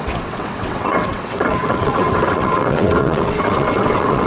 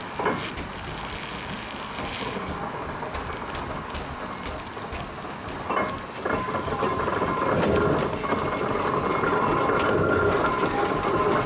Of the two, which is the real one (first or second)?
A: second